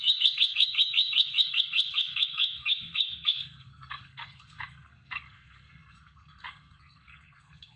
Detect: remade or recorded remade